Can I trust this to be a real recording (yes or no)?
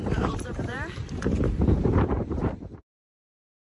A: no